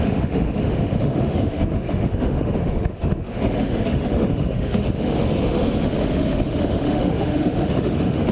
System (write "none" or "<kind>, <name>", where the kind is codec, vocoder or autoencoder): autoencoder, DAC-VAE